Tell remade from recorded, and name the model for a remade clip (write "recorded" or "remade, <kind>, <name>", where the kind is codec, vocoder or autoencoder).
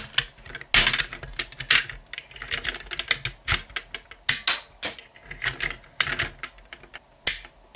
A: recorded